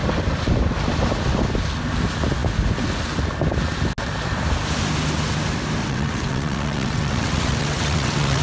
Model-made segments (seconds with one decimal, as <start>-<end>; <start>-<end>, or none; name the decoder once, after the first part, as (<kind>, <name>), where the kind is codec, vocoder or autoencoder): 5.8-8.4 (vocoder, WaveNeXt)